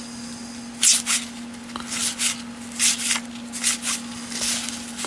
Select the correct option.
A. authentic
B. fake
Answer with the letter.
A